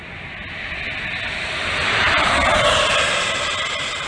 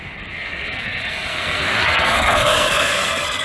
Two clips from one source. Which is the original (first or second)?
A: first